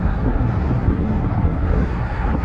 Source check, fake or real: fake